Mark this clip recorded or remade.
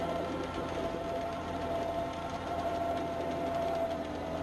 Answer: recorded